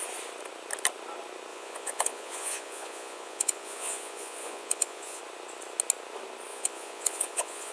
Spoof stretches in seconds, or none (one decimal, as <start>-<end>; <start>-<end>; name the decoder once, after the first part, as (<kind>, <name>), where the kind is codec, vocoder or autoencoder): 1.5-5.2 (vocoder, Vocos); 6.5-7.7